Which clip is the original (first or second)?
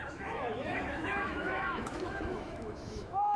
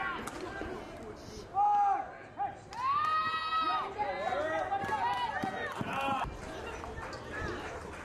second